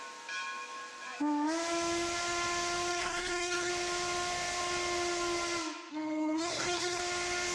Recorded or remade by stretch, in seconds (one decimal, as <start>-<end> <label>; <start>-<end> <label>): 0.0-2.9 recorded; 2.9-3.7 remade; 3.7-5.9 recorded; 5.9-7.0 remade; 7.0-7.5 recorded